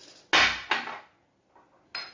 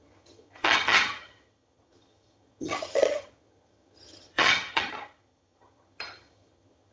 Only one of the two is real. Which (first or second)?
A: first